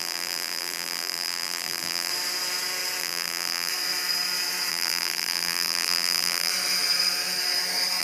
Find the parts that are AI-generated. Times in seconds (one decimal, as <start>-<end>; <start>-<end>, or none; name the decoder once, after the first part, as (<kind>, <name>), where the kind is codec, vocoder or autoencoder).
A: 0.0-2.1 (vocoder, BigVGAN v2); 3.0-3.7; 4.7-6.5